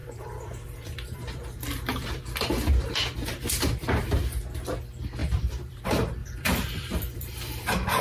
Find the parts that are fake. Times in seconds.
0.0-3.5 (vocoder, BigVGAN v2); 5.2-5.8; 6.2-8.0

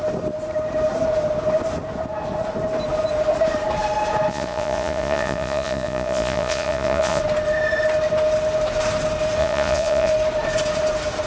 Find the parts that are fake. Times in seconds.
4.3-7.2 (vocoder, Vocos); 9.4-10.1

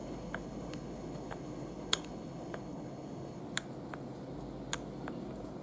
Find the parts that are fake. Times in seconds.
0.0-3.4 (codec, HILCodec)